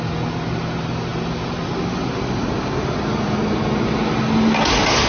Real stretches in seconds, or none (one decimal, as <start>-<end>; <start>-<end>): 0.0-5.1